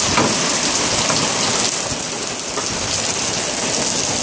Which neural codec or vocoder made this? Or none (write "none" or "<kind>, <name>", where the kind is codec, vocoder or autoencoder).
none